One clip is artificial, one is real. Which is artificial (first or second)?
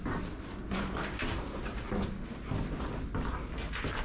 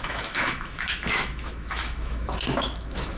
second